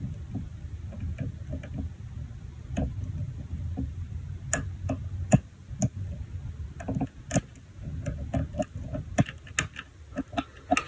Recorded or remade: recorded